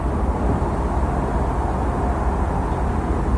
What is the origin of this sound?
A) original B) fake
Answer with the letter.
A